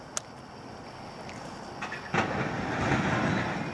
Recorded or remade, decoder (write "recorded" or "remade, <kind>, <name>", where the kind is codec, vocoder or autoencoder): recorded